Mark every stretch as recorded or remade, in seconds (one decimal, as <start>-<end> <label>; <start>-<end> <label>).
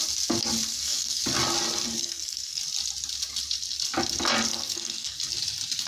0.0-0.7 recorded; 0.7-1.2 remade; 1.2-2.0 recorded; 2.0-2.6 remade; 2.6-4.5 recorded; 4.5-5.2 remade; 5.2-5.9 recorded